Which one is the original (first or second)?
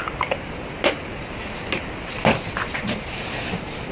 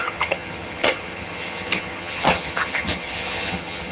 first